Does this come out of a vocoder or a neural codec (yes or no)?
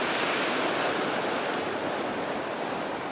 no